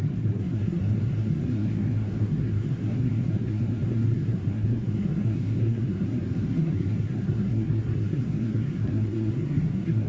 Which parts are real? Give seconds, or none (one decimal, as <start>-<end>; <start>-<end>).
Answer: none